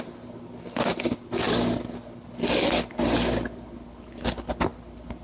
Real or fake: real